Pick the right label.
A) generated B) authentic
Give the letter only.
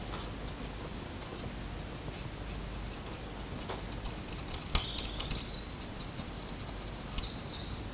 B